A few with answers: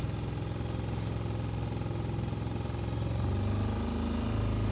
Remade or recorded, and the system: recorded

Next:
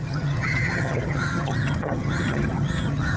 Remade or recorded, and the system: remade, vocoder, HiFi-GAN